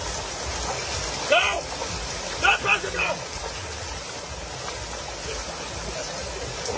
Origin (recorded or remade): recorded